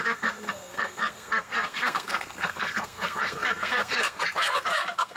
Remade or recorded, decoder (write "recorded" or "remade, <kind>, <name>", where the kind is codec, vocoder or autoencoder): remade, codec, SNAC